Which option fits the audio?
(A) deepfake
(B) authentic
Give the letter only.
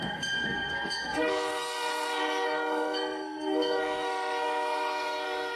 A